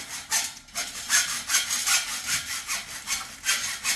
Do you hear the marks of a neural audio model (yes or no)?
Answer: no